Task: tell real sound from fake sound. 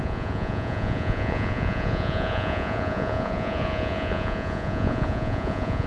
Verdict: fake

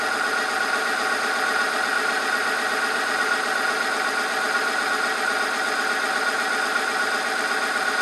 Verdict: real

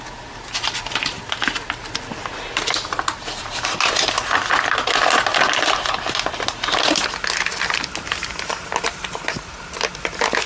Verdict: real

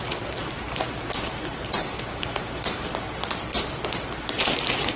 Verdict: real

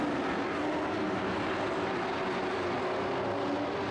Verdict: real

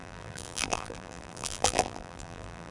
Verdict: fake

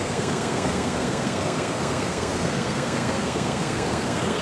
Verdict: fake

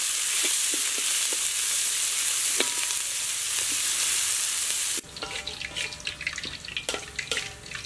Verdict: real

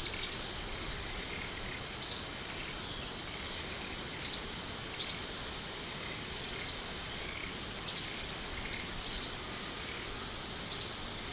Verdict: real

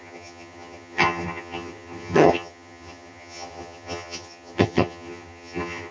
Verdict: fake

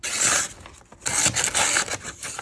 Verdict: real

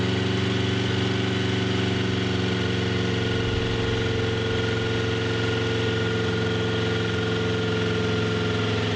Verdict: real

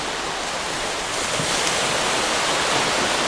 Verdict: real